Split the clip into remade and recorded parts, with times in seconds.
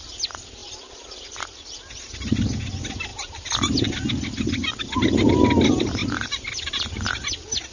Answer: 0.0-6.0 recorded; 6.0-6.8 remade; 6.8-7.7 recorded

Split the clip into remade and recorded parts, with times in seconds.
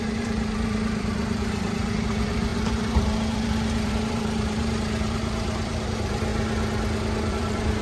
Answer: 0.0-6.3 remade; 6.3-7.3 recorded; 7.3-7.8 remade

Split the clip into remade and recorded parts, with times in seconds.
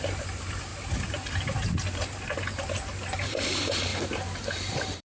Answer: 0.0-0.7 remade; 0.7-2.3 recorded; 2.3-3.9 remade; 3.9-4.7 recorded; 4.7-5.2 remade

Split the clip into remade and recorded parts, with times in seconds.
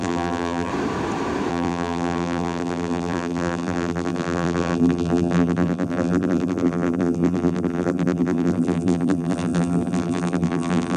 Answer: 0.0-0.7 remade; 0.7-1.5 recorded; 1.5-11.0 remade